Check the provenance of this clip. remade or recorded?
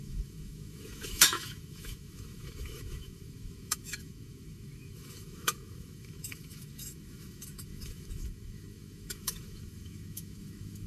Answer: remade